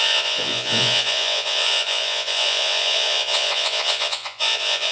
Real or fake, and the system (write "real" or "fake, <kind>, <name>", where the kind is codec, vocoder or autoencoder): fake, vocoder, Vocos